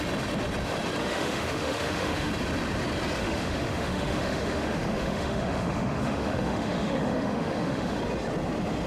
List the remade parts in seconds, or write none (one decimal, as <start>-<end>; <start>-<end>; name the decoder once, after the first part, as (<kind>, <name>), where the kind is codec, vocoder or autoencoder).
1.0-2.3 (autoencoder, DAC-VAE); 3.2-8.0

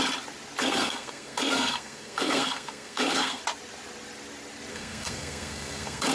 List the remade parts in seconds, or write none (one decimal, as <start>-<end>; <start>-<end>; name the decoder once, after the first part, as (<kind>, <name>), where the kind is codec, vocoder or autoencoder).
0.6-3.4 (codec, SNAC); 4.7-6.1

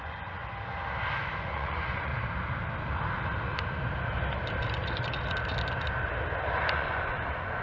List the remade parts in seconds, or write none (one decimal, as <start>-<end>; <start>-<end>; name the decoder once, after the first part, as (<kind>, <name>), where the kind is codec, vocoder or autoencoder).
0.0-0.4 (vocoder, Vocos); 1.4-2.1; 6.7-7.6